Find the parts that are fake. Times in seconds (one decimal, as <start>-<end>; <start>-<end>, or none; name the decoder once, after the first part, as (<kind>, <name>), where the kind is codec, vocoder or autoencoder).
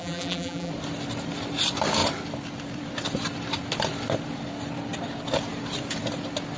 0.0-0.7 (vocoder, BigVGAN v2)